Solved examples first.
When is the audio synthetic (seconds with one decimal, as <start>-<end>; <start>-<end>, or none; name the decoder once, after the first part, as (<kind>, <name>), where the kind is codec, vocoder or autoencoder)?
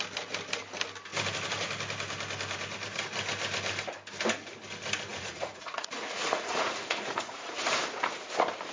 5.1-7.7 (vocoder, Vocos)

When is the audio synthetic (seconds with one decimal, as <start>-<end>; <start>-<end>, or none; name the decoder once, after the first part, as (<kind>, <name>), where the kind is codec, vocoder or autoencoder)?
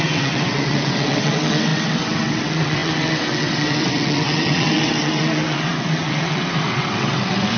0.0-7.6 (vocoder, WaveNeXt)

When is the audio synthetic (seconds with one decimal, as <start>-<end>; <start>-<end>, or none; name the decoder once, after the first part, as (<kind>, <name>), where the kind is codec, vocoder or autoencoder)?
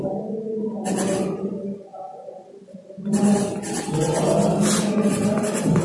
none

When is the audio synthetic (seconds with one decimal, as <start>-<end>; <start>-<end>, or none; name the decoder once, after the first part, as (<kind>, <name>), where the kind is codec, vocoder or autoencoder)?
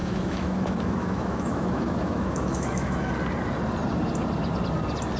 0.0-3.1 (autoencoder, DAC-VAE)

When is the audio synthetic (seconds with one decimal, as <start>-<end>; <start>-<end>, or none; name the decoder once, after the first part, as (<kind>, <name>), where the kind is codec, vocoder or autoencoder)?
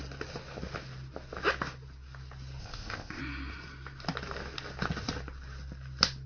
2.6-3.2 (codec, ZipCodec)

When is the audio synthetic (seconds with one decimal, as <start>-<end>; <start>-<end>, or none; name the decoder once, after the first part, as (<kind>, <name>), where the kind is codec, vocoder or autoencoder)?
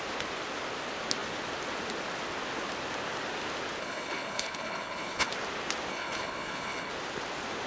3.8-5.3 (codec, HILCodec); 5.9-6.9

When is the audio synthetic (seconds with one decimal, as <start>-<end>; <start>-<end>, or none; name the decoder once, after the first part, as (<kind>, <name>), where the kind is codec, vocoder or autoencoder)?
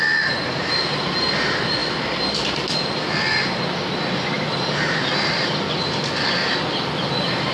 none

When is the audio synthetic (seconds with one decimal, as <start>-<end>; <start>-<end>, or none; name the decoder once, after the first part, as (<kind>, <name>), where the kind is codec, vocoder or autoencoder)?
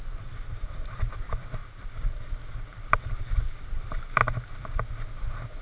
1.6-2.2 (vocoder, BigVGAN v2); 2.7-4.2